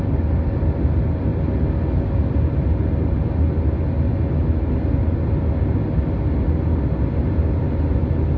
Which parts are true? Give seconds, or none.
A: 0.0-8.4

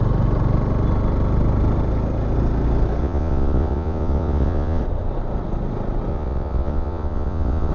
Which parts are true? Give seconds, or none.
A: 0.0-3.0; 4.8-6.1